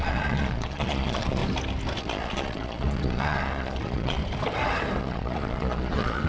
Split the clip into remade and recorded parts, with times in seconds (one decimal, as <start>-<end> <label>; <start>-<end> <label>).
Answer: 0.0-1.4 remade; 1.4-2.0 recorded; 2.0-4.2 remade; 4.2-5.0 recorded; 5.0-6.3 remade

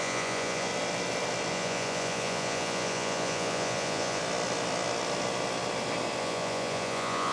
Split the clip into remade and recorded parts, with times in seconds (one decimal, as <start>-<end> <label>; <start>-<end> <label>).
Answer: 0.0-0.7 remade; 0.7-1.5 recorded; 1.5-4.2 remade; 4.2-6.2 recorded; 6.2-7.3 remade

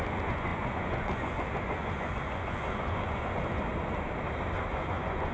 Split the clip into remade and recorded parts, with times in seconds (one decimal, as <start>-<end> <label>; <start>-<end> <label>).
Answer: 0.0-3.7 remade; 3.7-4.7 recorded; 4.7-5.3 remade

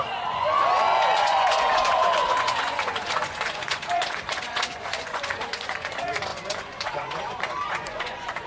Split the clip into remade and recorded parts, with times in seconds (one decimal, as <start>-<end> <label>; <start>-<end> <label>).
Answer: 0.0-8.5 remade

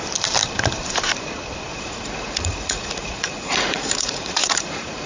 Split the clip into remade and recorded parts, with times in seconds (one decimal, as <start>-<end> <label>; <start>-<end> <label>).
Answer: 0.0-1.7 recorded; 1.7-5.1 remade

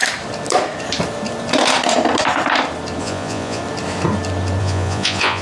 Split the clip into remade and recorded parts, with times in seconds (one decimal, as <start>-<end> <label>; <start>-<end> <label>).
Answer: 0.0-3.0 recorded; 3.0-3.6 remade; 3.6-4.6 recorded; 4.6-5.4 remade